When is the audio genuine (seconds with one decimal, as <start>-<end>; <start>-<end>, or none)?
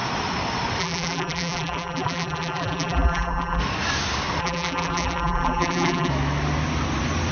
0.0-0.8; 3.6-4.4; 6.1-7.3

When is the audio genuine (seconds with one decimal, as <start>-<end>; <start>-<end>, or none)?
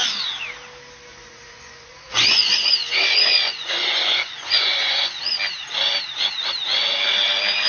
0.0-1.1; 5.2-7.7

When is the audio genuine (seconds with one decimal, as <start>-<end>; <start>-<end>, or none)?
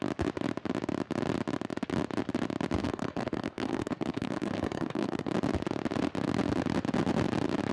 0.0-2.8; 5.3-7.7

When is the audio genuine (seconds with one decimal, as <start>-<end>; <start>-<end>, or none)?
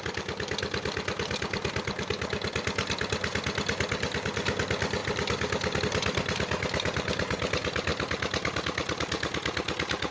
0.0-10.1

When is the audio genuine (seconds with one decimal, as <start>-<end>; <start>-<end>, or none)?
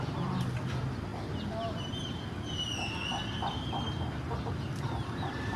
1.1-4.5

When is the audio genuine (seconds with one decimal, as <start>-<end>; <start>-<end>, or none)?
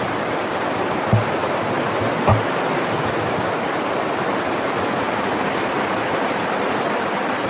0.0-7.5